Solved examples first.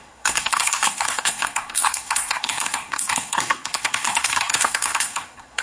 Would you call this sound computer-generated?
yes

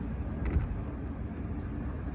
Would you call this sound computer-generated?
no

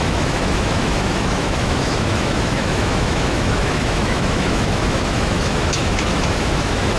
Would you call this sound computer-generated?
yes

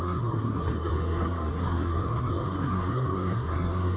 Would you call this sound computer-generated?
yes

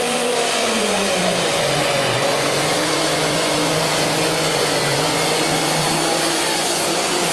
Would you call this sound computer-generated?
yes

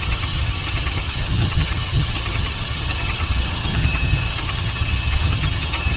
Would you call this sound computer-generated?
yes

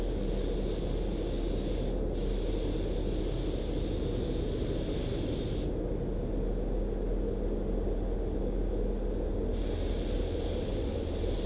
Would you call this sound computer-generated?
no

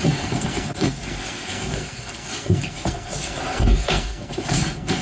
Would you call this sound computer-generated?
yes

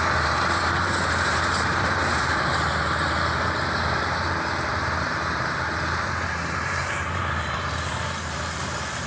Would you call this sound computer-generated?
yes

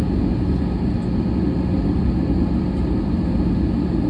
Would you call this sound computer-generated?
no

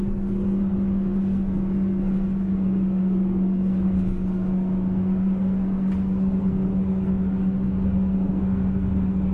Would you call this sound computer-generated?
yes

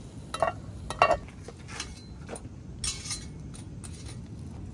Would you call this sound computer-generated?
no